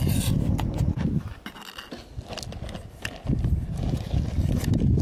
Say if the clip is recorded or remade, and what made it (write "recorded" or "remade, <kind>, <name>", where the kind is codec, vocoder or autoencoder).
recorded